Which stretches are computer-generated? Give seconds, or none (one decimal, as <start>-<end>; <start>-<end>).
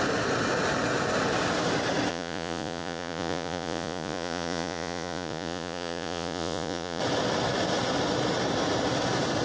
2.1-7.0